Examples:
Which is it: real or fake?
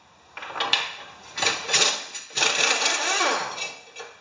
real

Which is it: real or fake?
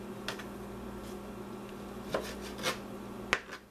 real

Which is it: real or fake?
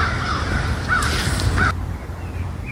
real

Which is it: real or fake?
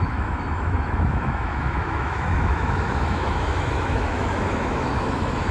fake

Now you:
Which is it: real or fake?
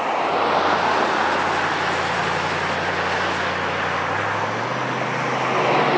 real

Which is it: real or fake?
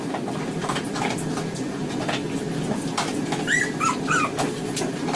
real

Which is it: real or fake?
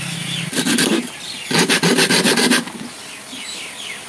real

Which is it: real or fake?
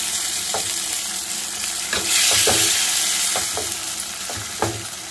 real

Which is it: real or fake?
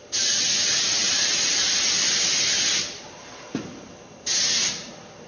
real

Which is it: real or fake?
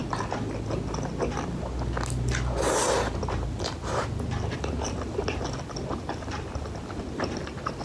real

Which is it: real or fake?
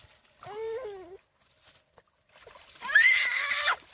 fake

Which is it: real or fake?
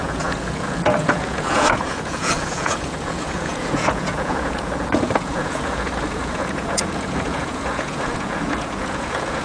fake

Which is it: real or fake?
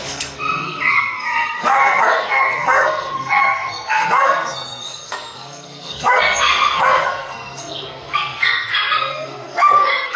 fake